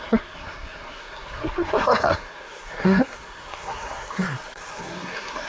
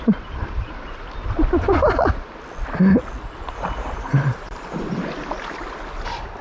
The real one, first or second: second